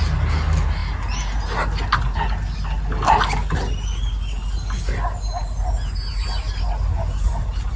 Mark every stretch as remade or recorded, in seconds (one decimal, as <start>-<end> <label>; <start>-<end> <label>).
0.0-7.8 recorded